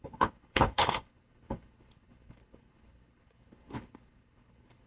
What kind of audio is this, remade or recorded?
remade